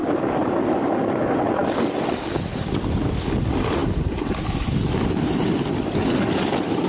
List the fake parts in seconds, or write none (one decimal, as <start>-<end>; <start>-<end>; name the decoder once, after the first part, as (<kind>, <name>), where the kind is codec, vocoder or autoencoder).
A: 0.0-0.6 (vocoder, BigVGAN v2); 3.8-5.5

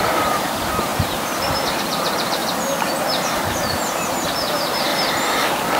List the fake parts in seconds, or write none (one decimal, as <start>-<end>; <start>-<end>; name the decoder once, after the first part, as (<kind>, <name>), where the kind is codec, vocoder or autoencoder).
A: 0.0-2.4 (vocoder, BigVGAN v2); 3.0-4.9

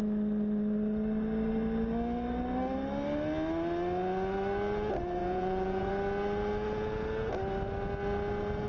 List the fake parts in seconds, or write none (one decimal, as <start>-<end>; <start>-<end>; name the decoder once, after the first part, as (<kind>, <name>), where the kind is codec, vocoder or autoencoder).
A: 5.2-5.9 (vocoder, Vocos)

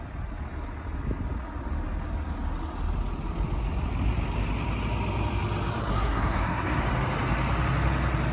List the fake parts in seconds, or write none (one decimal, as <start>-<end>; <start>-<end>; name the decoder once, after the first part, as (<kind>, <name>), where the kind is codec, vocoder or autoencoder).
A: 5.9-6.8 (codec, SNAC)

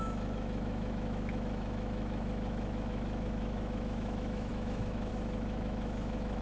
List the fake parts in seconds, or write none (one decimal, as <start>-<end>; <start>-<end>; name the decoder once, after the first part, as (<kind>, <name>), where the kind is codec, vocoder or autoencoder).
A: 0.0-6.4 (autoencoder, DAC-VAE)

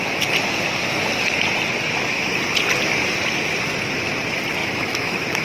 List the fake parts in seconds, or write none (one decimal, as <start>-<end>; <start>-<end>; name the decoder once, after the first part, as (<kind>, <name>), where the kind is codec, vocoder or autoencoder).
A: 4.6-5.4 (autoencoder, DAC-VAE)